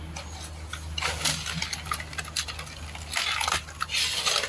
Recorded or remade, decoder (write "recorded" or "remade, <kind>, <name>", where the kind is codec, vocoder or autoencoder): recorded